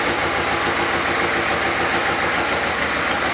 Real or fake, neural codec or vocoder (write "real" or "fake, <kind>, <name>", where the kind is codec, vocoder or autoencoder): real